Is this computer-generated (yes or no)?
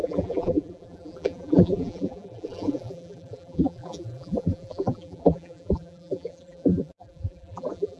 yes